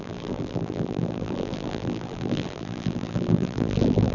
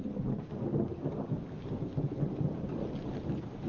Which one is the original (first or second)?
second